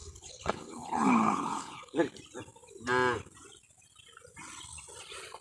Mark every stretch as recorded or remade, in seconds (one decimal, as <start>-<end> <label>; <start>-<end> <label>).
0.0-2.0 remade; 2.0-5.4 recorded